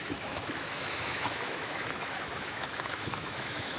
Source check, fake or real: fake